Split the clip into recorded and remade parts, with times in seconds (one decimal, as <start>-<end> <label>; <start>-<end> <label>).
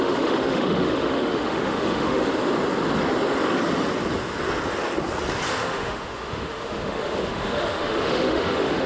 0.0-2.3 remade; 2.3-5.5 recorded; 5.5-8.9 remade